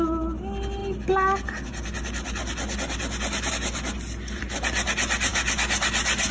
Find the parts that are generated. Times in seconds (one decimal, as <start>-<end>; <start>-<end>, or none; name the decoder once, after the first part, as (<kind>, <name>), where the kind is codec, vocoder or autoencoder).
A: none